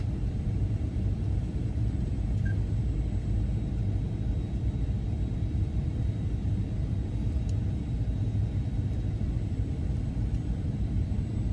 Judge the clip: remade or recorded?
remade